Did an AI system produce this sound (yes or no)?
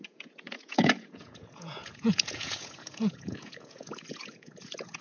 yes